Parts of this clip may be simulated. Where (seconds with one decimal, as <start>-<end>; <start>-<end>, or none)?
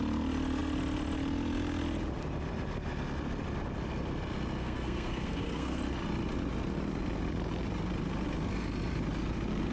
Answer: 4.6-5.8